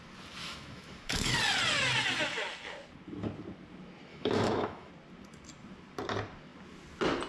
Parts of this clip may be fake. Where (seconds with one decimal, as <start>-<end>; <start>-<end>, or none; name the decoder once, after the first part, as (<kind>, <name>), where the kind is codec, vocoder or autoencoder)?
0.4-1.3 (autoencoder, DAC-VAE); 4.1-4.9